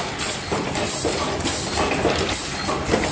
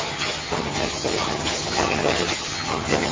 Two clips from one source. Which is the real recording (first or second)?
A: first